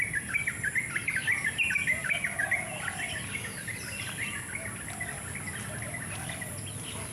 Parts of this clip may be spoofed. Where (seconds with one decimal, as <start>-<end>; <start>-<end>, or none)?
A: none